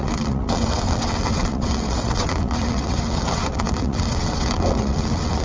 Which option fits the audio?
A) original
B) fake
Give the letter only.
B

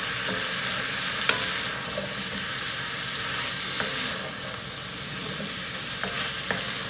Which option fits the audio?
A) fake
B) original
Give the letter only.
B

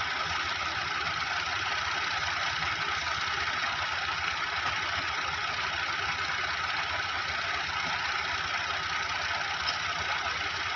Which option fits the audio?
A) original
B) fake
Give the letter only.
A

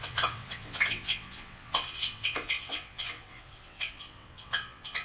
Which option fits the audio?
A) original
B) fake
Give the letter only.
B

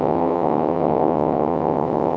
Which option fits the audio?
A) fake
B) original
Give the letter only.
A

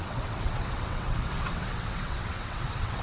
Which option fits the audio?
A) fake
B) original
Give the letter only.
A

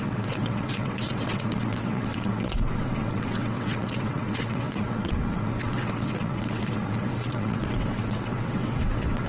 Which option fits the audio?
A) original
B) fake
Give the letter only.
B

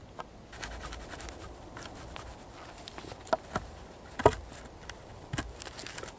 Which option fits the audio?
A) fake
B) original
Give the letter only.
B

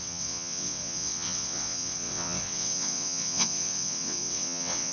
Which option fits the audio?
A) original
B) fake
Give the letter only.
B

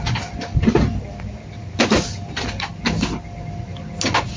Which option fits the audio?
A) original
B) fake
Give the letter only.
A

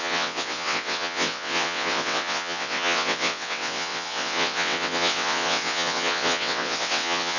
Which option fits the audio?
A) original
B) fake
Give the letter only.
B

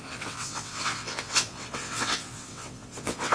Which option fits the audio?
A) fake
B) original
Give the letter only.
A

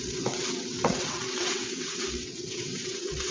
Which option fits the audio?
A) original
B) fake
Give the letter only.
B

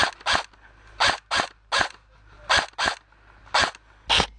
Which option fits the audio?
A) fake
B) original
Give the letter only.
B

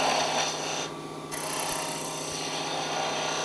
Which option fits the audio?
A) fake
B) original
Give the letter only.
B